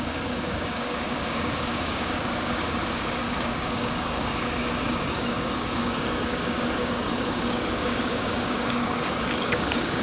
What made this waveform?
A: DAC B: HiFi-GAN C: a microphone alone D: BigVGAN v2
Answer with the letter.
A